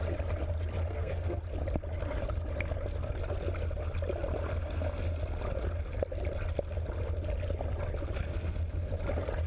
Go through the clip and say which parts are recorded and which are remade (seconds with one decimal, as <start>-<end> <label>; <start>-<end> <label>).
0.0-0.9 recorded; 0.9-1.4 remade; 1.4-9.5 recorded